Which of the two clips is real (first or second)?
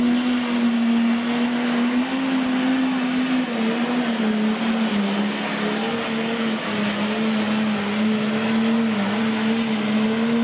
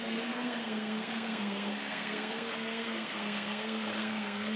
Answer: first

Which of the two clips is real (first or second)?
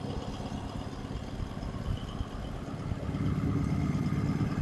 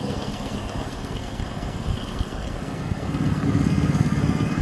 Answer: first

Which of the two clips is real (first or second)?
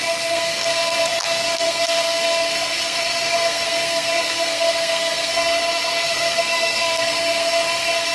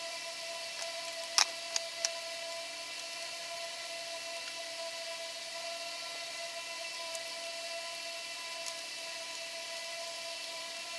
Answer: second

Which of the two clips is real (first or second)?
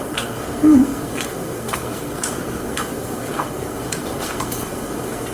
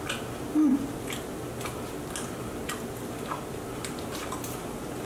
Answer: second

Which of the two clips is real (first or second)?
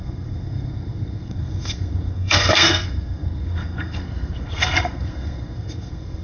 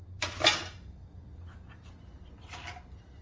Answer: second